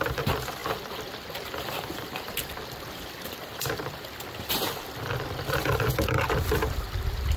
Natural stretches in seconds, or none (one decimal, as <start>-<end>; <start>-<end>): 0.0-7.4